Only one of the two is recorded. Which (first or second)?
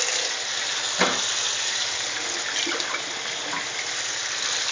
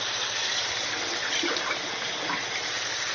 first